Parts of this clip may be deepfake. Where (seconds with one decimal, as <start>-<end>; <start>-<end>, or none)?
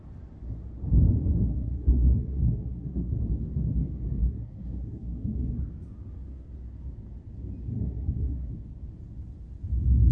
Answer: 1.5-3.1; 4.2-5.6; 7.7-8.5